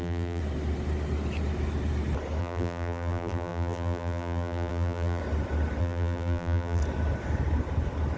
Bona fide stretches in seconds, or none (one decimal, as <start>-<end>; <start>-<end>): 0.4-2.4; 5.2-5.8; 6.8-8.2